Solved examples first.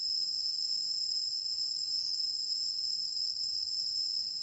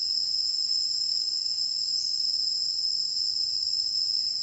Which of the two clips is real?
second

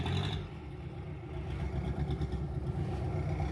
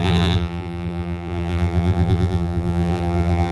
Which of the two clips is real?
first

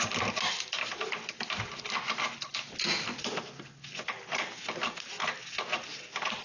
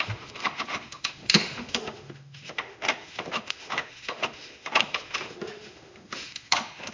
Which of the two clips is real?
first